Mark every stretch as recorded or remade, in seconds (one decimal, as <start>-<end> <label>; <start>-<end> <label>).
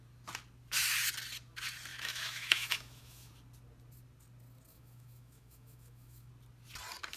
0.0-1.9 recorded; 1.9-3.3 remade; 3.3-4.7 recorded; 4.7-6.3 remade; 6.3-7.2 recorded